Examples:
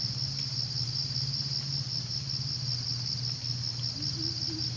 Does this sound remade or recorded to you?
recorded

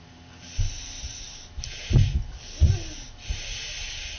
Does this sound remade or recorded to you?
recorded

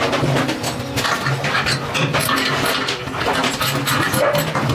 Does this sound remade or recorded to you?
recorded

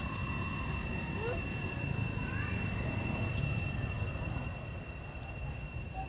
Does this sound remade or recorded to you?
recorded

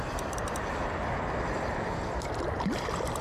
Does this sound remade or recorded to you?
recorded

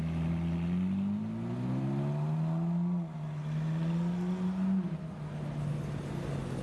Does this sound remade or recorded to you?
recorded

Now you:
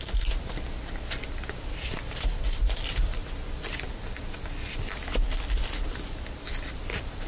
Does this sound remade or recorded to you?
recorded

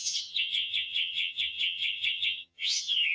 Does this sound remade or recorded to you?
remade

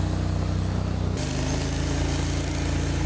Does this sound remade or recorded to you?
recorded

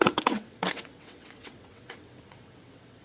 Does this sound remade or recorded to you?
remade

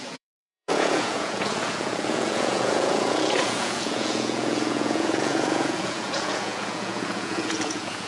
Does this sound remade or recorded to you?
remade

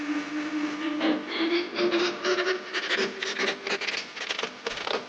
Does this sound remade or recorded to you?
recorded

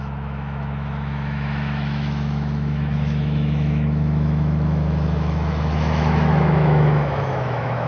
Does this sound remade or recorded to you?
remade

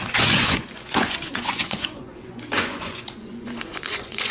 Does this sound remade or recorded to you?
remade